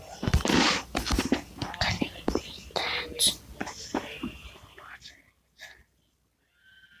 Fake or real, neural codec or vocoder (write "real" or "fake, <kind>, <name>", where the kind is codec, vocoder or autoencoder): real